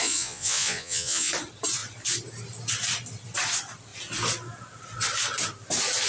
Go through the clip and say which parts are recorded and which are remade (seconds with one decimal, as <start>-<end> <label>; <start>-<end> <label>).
0.0-1.3 remade; 1.3-6.1 recorded